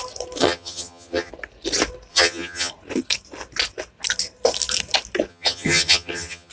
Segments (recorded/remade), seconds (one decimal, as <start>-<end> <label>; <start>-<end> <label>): 0.0-0.4 recorded; 0.4-1.3 remade; 1.3-2.1 recorded; 2.1-2.7 remade; 2.7-5.3 recorded; 5.3-6.5 remade